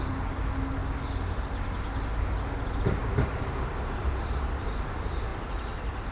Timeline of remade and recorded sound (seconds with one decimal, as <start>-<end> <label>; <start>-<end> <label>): 0.0-3.0 recorded; 3.0-4.0 remade; 4.0-6.1 recorded